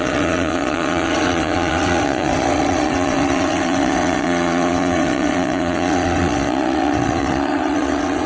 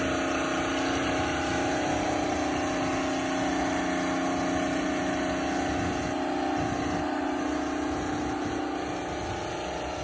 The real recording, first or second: second